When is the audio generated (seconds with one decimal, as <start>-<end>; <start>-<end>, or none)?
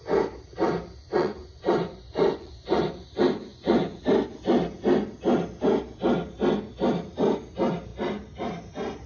1.0-3.0; 3.5-4.0